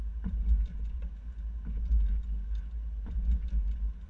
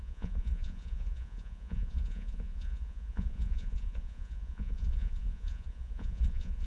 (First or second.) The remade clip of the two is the second